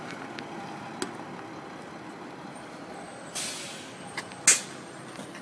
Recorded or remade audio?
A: recorded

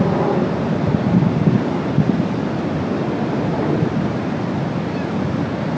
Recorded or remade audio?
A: recorded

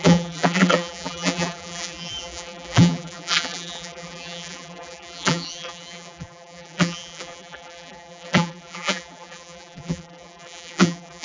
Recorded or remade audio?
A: remade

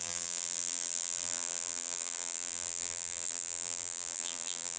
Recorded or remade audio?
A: remade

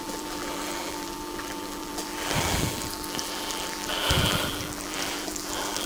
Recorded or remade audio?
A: remade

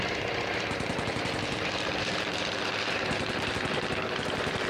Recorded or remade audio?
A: remade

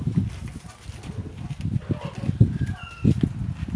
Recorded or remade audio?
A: recorded